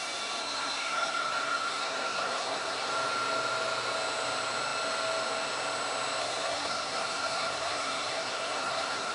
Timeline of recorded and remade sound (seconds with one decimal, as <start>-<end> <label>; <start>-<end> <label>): 0.0-0.4 recorded; 0.4-2.9 remade; 2.9-6.2 recorded; 6.2-9.1 remade